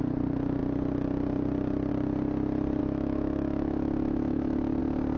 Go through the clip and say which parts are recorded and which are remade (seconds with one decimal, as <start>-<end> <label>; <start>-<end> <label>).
0.0-2.8 recorded; 2.8-4.8 remade; 4.8-5.2 recorded